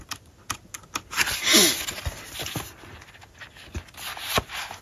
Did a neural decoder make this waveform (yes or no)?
no